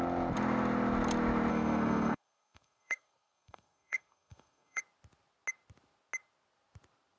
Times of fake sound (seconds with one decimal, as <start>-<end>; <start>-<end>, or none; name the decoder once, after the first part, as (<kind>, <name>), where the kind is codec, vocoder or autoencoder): 1.5-4.8 (codec, SNAC)